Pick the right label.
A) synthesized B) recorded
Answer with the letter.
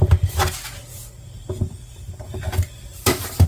B